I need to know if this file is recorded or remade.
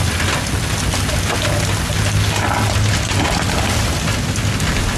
recorded